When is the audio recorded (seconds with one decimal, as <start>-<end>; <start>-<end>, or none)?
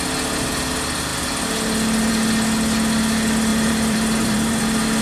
0.0-3.5; 4.6-5.0